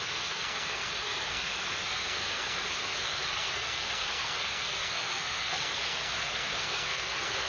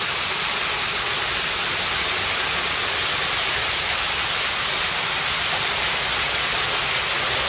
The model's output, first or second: first